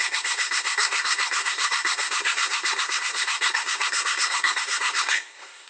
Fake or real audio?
fake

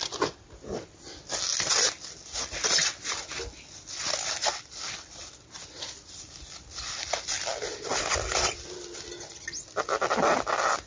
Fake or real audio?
real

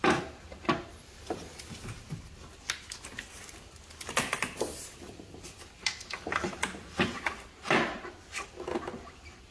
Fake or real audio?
real